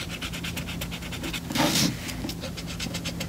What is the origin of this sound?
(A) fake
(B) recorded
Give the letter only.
B